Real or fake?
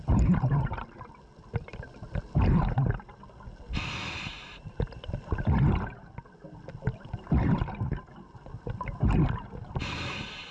real